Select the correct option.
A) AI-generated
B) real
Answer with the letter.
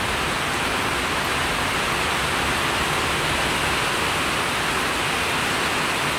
B